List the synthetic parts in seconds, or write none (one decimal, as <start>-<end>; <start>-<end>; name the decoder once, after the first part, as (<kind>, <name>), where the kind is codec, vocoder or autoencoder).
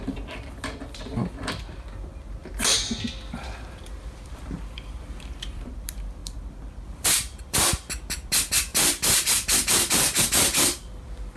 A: 0.0-11.4 (vocoder, BigVGAN v2)